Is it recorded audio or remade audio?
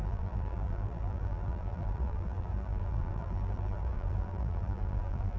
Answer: remade